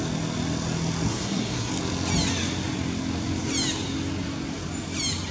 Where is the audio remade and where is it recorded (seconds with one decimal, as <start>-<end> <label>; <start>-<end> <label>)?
0.0-1.1 recorded; 1.1-1.7 remade; 1.7-5.3 recorded